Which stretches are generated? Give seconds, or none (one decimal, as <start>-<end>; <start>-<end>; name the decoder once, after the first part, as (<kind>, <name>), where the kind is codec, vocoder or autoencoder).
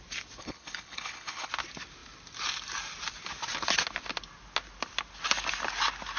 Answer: 0.4-1.5 (codec, HILCodec)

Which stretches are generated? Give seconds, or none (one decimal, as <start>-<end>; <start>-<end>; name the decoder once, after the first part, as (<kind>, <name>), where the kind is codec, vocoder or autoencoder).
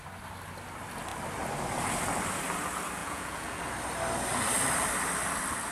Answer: 3.0-3.6 (vocoder, Vocos)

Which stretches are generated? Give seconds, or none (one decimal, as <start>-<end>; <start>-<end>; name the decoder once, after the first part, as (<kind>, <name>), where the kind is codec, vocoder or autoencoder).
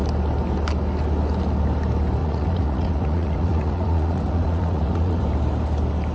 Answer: 2.2-5.2 (vocoder, Vocos)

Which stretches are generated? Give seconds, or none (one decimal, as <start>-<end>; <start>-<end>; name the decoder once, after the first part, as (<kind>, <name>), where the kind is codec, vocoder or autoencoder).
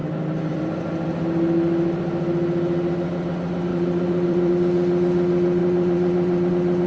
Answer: 0.0-0.6 (vocoder, BigVGAN v2); 3.7-4.5; 5.6-6.5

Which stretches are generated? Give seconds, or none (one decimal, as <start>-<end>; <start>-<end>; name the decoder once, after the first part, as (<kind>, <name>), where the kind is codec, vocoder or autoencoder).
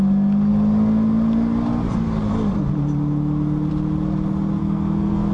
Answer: 4.6-5.3 (codec, SNAC)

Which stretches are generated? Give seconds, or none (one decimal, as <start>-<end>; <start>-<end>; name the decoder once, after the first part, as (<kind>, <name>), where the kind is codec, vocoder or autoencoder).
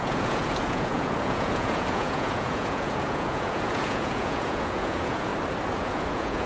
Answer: 0.0-5.3 (vocoder, Vocos); 5.8-6.5